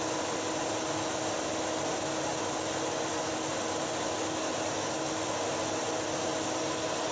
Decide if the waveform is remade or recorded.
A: recorded